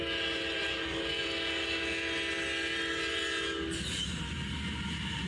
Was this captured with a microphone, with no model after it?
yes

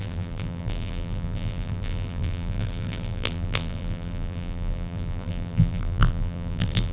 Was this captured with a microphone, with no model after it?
no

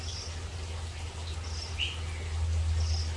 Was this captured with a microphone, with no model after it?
yes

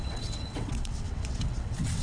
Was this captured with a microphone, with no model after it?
no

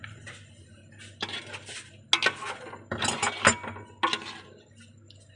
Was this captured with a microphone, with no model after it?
yes